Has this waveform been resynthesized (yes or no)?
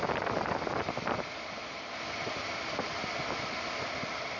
no